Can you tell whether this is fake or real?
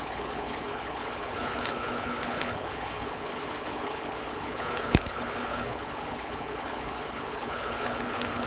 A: fake